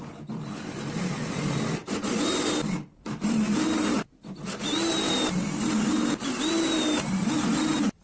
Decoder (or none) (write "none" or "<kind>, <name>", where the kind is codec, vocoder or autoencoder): none